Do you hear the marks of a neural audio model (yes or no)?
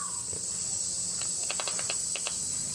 no